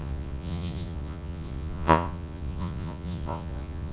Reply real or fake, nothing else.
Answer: fake